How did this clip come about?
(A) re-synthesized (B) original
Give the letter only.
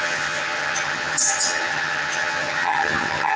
A